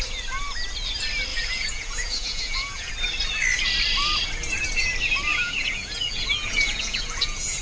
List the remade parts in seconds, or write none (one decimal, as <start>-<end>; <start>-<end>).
1.3-2.9; 5.3-7.6